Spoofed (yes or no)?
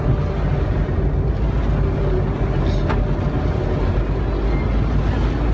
no